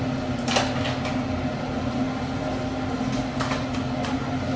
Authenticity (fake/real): real